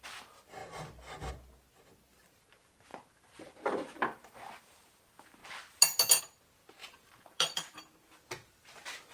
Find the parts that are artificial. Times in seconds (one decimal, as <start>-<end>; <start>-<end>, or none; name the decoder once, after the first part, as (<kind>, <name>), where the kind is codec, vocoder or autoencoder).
2.9-3.5 (vocoder, BigVGAN v2); 6.8-7.8